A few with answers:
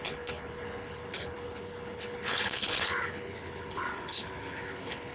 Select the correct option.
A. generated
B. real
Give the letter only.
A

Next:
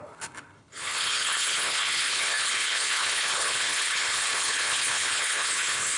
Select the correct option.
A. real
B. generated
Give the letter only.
B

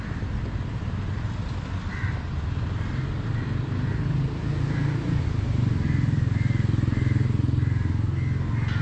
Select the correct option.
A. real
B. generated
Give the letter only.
A